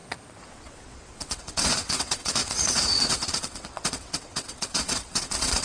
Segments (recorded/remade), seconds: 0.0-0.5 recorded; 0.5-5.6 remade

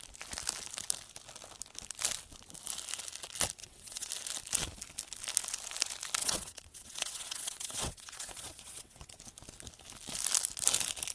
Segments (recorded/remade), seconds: 0.0-3.6 recorded; 3.6-4.1 remade; 4.1-6.2 recorded; 6.2-9.2 remade; 9.2-11.1 recorded

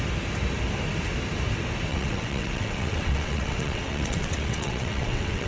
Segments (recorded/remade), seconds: 0.0-1.9 recorded; 1.9-5.5 remade

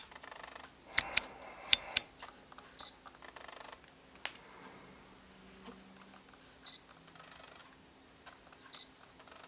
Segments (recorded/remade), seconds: 0.0-9.5 recorded

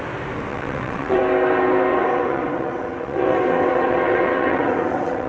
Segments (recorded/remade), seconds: 0.0-0.5 recorded; 0.5-1.2 remade; 1.2-1.9 recorded; 1.9-5.3 remade

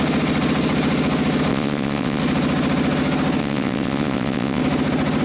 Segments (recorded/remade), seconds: 0.0-1.5 recorded; 1.5-2.2 remade; 2.2-3.4 recorded; 3.4-4.6 remade; 4.6-5.2 recorded

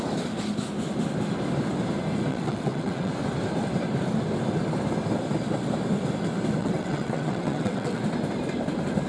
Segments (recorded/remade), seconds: 0.0-2.3 recorded; 2.3-3.1 remade; 3.1-6.6 recorded; 6.6-8.0 remade; 8.0-9.1 recorded